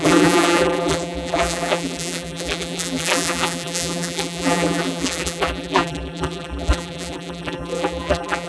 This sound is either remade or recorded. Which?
remade